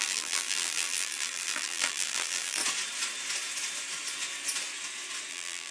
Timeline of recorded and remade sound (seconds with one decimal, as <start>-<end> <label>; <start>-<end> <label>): 0.0-2.6 remade; 2.6-5.3 recorded; 5.3-5.7 remade